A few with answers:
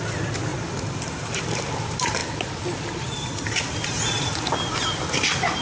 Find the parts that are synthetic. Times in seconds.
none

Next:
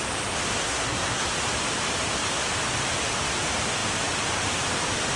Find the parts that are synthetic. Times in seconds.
0.6-1.3

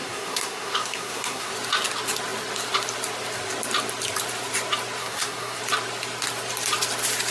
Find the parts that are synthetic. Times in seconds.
0.0-1.5; 5.0-5.6

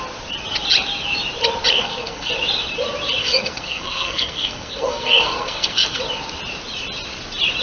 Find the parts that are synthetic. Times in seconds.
1.7-2.3; 3.2-6.0